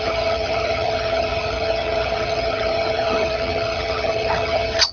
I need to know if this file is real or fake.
fake